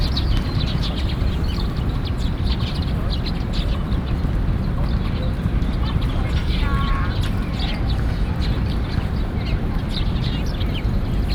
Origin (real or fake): real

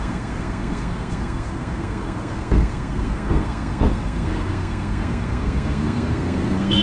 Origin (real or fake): fake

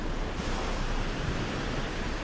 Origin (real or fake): real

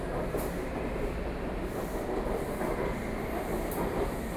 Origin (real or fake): real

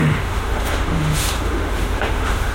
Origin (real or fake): fake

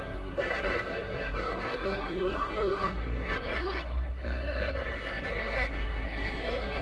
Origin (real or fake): fake